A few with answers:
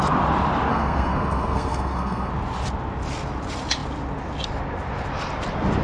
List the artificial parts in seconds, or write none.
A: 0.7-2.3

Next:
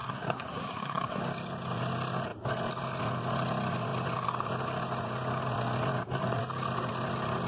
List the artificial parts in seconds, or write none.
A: 0.0-1.2